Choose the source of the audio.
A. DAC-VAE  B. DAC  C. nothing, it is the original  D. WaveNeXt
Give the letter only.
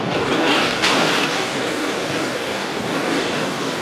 B